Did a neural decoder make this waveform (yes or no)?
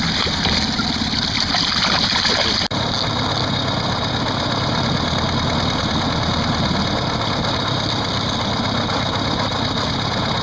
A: no